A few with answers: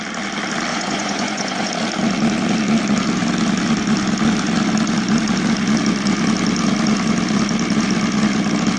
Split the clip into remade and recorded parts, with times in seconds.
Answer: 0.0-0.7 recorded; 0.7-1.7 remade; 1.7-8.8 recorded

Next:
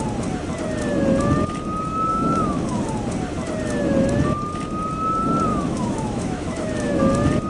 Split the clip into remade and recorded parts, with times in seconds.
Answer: 0.0-2.1 recorded; 2.1-2.8 remade; 2.8-5.5 recorded; 5.5-7.0 remade; 7.0-7.5 recorded